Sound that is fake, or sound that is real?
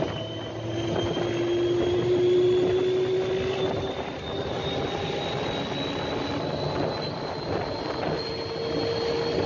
real